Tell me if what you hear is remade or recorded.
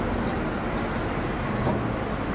recorded